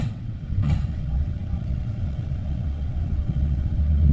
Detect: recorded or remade remade